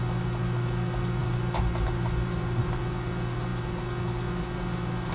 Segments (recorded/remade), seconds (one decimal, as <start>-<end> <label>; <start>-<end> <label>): 0.0-1.2 recorded; 1.2-2.8 remade; 2.8-5.1 recorded